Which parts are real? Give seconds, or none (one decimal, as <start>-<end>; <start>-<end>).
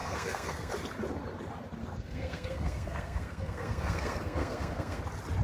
0.7-1.8; 5.0-5.4